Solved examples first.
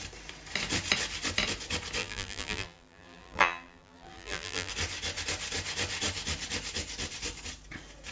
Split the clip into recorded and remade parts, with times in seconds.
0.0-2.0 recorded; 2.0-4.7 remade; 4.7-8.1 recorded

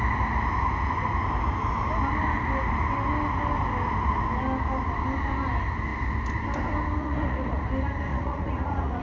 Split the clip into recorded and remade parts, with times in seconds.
0.0-7.0 recorded; 7.0-7.6 remade; 7.6-8.1 recorded; 8.1-9.0 remade

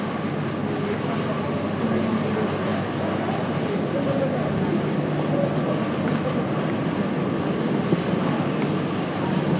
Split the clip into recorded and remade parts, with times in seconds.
0.0-9.6 recorded